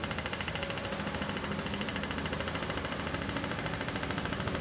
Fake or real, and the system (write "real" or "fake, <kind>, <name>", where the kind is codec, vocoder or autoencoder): real